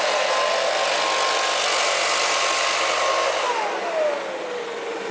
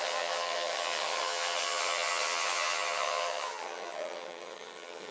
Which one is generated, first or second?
second